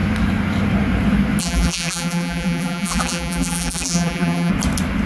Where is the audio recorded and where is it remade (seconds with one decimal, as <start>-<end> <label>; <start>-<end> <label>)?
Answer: 0.0-1.4 recorded; 1.4-4.5 remade; 4.5-5.1 recorded